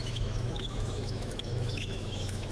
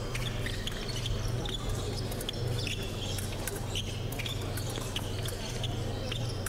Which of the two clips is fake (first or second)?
first